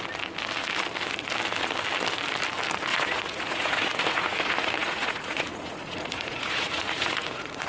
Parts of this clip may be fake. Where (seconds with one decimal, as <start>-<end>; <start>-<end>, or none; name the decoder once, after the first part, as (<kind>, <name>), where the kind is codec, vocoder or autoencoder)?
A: 2.9-7.7 (vocoder, Vocos)